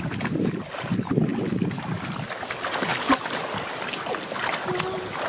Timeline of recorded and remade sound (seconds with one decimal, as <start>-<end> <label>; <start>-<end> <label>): 0.0-5.3 recorded